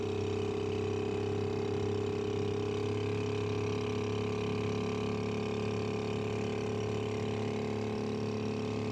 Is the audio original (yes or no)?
yes